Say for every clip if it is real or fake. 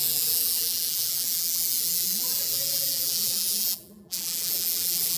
fake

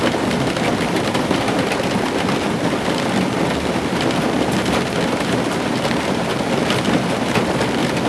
real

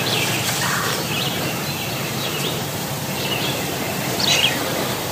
fake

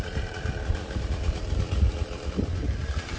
real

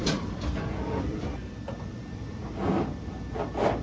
real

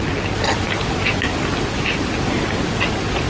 real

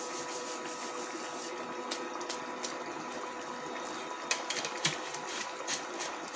real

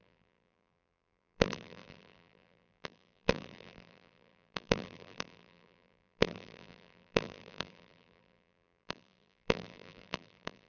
fake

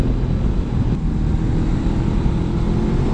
real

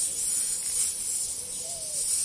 real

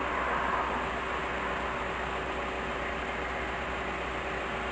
real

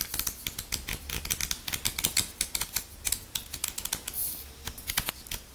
real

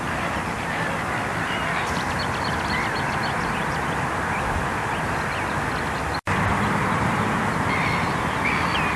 real